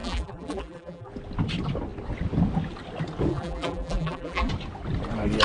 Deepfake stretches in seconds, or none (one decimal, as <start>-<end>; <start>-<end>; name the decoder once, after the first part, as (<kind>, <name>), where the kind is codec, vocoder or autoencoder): 0.0-1.1 (vocoder, BigVGAN v2); 3.3-4.5